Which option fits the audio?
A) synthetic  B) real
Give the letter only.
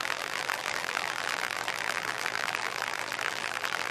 A